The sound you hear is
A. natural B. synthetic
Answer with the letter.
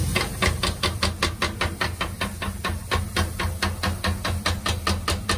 A